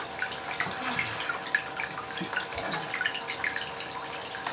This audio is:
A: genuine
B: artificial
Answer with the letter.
A